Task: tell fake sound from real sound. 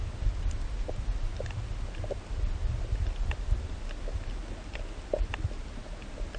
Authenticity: real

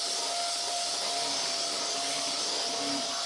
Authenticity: real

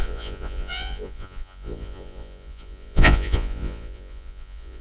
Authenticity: fake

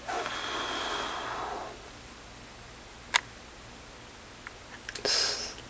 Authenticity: real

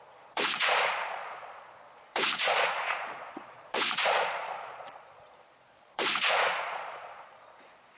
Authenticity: fake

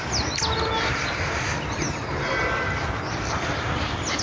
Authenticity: real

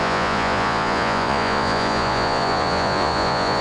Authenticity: fake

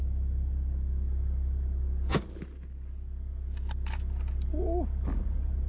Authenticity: real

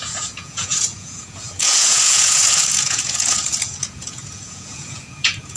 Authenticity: fake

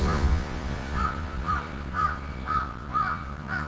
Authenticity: fake